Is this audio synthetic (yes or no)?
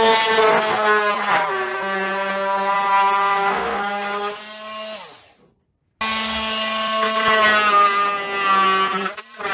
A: no